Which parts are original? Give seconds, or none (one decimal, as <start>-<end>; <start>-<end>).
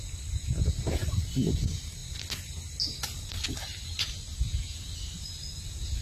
0.0-6.0